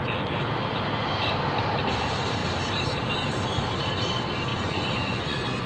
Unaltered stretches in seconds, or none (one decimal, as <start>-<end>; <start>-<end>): 0.0-4.5